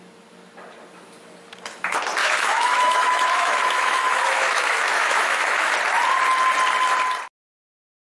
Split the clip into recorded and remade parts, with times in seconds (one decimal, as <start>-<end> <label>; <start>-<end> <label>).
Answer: 0.0-2.2 recorded; 2.2-5.7 remade; 5.7-8.0 recorded